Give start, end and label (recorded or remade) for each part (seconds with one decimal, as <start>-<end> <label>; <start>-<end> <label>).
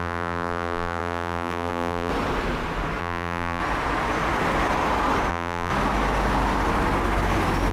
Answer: 0.0-2.1 remade; 2.1-3.0 recorded; 3.0-3.6 remade; 3.6-5.3 recorded; 5.3-5.7 remade; 5.7-7.7 recorded